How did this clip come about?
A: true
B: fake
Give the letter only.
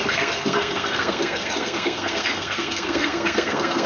B